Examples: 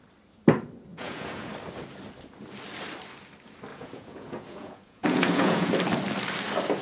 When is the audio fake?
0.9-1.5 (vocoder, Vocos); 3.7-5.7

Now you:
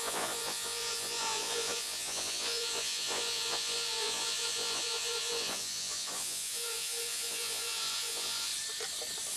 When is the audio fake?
0.0-8.5 (vocoder, Vocos)

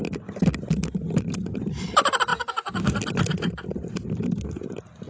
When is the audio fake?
none

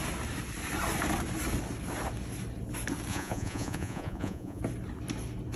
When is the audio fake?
3.1-4.6 (vocoder, Vocos)

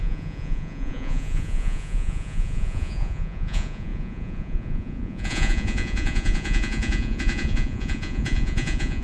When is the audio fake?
0.0-9.0 (vocoder, Vocos)